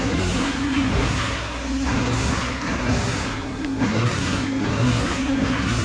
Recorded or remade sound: remade